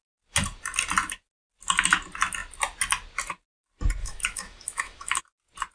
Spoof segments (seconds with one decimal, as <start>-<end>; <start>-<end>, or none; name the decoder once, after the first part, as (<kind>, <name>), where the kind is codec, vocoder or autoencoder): 4.0-5.2 (autoencoder, DAC-VAE)